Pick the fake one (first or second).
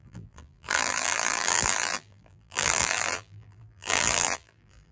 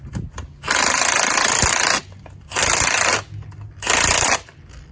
first